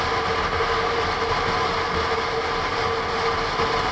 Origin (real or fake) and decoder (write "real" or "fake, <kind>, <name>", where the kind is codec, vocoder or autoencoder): real